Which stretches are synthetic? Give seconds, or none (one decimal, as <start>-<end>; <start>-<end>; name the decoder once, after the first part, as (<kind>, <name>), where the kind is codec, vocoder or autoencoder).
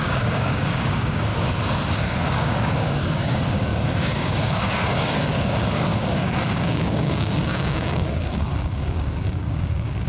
0.0-1.3 (codec, DAC); 2.3-10.1